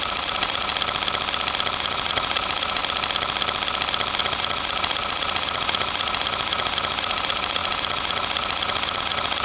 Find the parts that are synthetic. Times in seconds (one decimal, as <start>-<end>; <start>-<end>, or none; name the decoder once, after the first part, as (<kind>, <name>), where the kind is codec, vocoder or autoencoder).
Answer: 0.0-0.7 (vocoder, Vocos); 1.8-2.8; 4.2-9.4

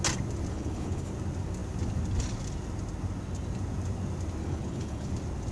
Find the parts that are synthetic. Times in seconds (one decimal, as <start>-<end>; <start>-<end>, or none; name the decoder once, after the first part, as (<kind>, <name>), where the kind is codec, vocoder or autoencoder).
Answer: 0.5-1.1 (codec, HILCodec); 4.4-5.1

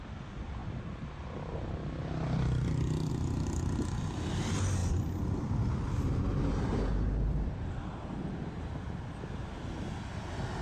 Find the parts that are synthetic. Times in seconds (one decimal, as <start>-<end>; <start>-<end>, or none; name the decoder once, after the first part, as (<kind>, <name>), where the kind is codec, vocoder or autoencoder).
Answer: none